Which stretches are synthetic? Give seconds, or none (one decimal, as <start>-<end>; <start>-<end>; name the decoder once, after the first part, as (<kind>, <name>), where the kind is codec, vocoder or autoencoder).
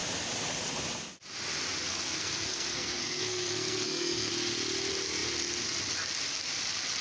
1.9-4.3 (codec, SNAC)